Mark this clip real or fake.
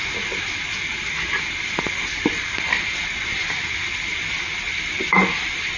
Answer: real